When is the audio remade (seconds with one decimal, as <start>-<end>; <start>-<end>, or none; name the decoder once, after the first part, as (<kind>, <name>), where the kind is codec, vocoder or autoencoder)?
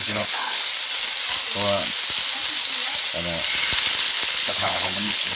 0.0-0.7 (codec, HILCodec); 3.9-5.3